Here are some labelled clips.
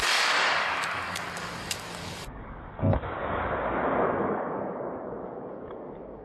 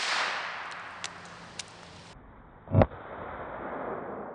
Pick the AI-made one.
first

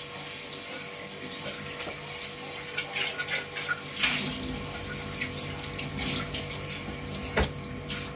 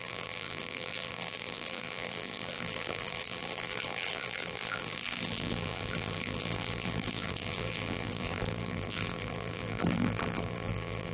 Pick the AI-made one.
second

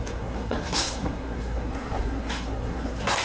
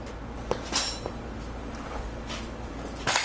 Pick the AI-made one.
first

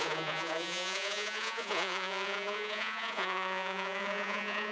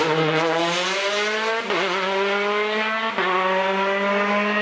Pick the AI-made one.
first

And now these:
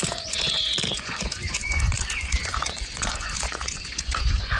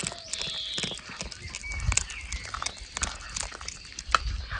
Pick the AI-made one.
first